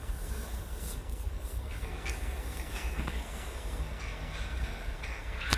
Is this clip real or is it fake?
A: fake